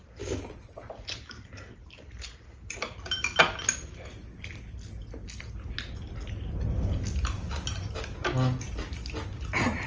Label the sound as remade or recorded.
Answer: recorded